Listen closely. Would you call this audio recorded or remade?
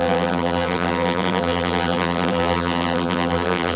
remade